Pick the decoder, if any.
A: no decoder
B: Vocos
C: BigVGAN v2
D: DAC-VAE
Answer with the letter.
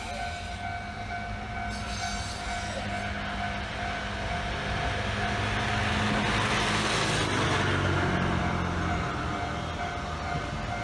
A